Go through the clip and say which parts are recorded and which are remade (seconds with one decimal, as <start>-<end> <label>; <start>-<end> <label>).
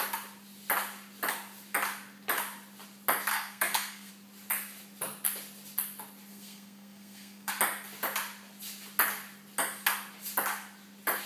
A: 0.0-3.3 recorded; 3.3-4.1 remade; 4.1-6.3 recorded; 6.3-7.5 remade; 7.5-11.3 recorded